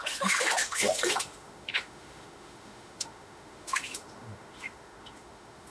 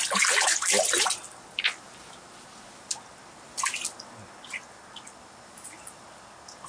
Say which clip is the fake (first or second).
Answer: first